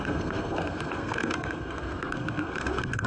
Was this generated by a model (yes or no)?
yes